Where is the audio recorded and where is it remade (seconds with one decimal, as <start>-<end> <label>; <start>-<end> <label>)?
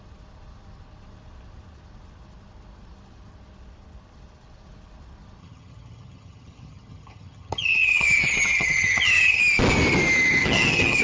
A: 0.0-5.4 recorded; 5.4-9.4 remade; 9.4-10.4 recorded; 10.4-11.0 remade